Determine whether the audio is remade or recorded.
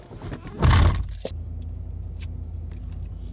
recorded